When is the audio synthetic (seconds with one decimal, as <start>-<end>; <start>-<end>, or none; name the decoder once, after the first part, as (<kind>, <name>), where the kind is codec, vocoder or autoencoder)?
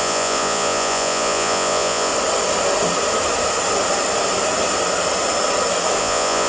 0.0-2.1 (vocoder, Vocos); 6.0-6.5